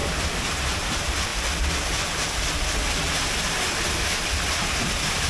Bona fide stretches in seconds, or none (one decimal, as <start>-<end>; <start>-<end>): 1.3-4.5